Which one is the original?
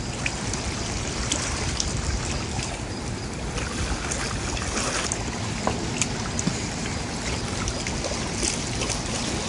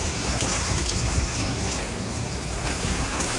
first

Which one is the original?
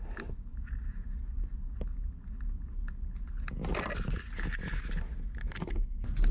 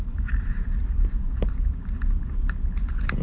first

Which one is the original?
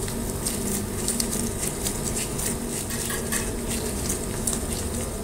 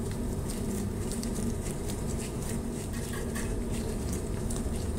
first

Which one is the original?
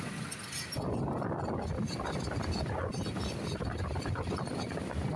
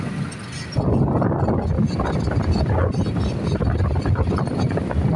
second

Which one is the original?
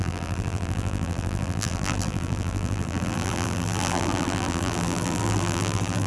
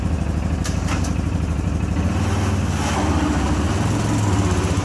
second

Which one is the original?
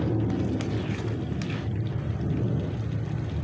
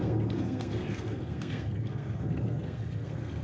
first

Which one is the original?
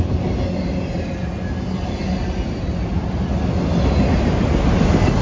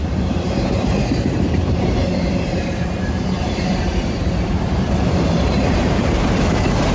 first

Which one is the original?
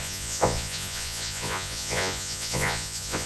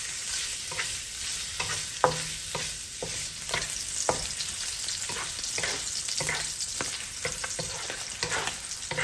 second